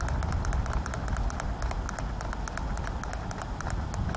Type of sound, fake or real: real